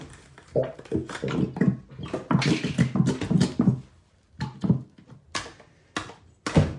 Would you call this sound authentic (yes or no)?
yes